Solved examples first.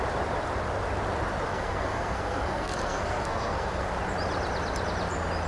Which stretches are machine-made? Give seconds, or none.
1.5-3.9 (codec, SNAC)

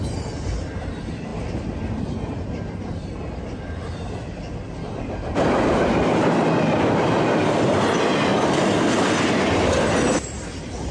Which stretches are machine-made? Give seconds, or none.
none

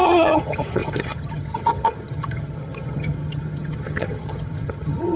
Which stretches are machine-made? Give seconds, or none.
0.0-5.2 (vocoder, HiFi-GAN)

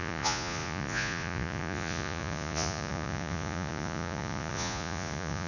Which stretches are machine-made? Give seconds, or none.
0.0-5.5 (vocoder, Vocos)

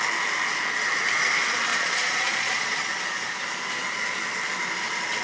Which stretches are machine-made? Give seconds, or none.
1.7-2.9 (vocoder, Vocos)

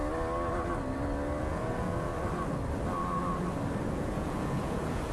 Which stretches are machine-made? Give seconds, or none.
1.4-2.1 (vocoder, Vocos); 3.9-5.1